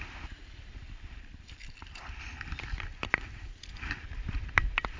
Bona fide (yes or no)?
no